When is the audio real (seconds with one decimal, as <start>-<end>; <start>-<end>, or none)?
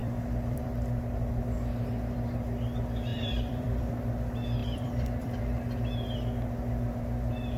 1.3-3.1; 3.8-4.6; 5.4-7.6